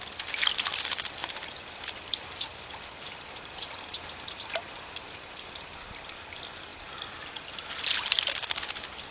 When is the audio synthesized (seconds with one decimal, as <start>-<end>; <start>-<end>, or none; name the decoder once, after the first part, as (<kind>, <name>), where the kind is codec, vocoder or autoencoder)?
1.2-5.9 (vocoder, BigVGAN v2); 6.7-7.3